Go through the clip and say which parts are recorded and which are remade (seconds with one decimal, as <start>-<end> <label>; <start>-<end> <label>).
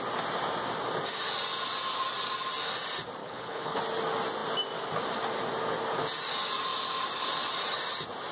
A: 0.0-3.2 recorded; 3.2-3.8 remade; 3.8-8.3 recorded